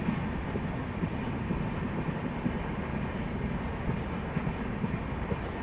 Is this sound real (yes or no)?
yes